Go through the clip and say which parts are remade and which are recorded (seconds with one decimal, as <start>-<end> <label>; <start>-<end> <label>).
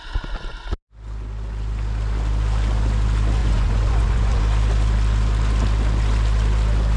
0.0-3.4 recorded; 3.4-4.4 remade; 4.4-7.0 recorded